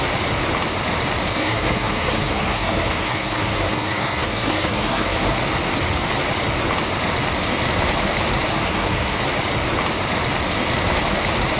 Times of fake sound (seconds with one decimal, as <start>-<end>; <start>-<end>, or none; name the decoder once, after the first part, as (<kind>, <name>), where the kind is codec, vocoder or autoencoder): 1.3-5.4 (codec, SNAC); 8.5-9.2